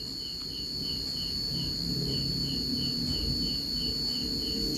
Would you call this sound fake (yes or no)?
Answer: no